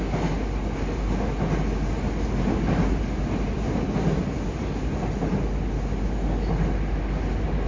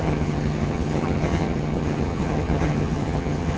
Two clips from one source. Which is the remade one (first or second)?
second